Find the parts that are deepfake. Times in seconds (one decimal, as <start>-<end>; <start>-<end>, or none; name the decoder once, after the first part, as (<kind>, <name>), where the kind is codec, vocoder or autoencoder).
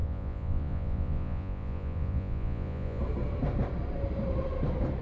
0.0-3.0 (vocoder, Vocos)